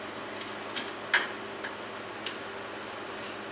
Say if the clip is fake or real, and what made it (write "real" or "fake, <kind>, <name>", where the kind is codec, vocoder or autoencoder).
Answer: real